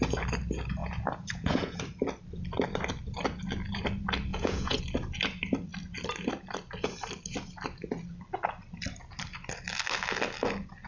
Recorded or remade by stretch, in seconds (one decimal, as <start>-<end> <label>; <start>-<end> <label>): 0.0-0.8 recorded; 0.8-1.8 remade; 1.8-4.3 recorded; 4.3-4.8 remade; 4.8-10.9 recorded